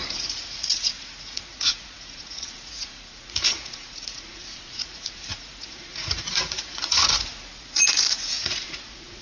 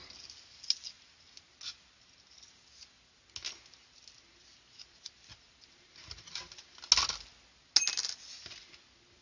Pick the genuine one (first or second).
second